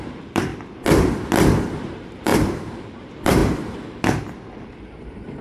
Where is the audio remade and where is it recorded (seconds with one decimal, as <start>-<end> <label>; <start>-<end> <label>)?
0.0-0.5 remade; 0.5-1.8 recorded; 1.8-3.4 remade; 3.4-5.0 recorded; 5.0-5.4 remade